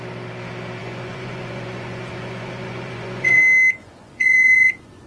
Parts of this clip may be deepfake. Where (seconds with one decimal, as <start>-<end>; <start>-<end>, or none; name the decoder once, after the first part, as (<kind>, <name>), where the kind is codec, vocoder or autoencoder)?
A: 0.8-3.4 (vocoder, Vocos); 3.8-5.1